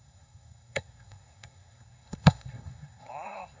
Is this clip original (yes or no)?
no